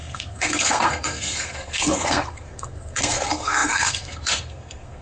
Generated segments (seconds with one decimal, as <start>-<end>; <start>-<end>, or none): 0.0-5.0

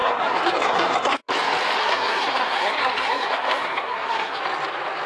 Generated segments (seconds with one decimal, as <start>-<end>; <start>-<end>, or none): 0.0-1.3; 1.8-4.4